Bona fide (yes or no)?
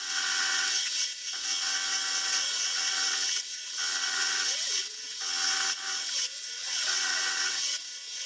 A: no